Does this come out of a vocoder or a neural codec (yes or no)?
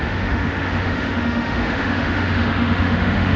yes